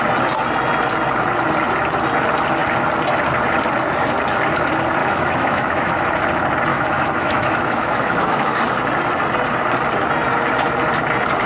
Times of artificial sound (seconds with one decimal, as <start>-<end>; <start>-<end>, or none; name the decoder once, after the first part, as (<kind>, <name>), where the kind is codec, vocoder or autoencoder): 5.0-6.1 (autoencoder, DAC-VAE); 6.7-8.6